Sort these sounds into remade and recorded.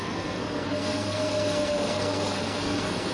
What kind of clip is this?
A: remade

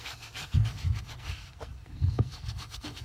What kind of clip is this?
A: remade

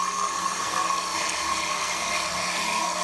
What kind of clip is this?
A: remade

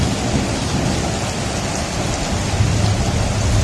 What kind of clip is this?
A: recorded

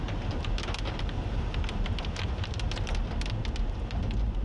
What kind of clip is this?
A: recorded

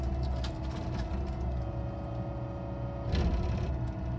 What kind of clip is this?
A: recorded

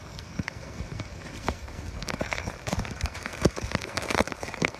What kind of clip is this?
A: remade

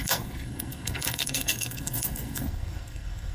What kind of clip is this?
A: remade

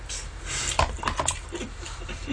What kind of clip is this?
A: recorded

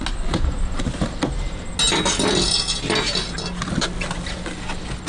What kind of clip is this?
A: recorded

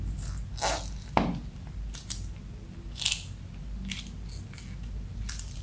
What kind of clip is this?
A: recorded